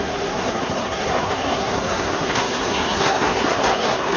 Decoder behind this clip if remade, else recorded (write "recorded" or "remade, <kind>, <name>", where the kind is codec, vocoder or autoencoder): remade, codec, SNAC